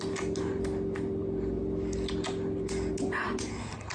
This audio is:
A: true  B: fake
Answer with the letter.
A